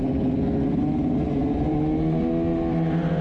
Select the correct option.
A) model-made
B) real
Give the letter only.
B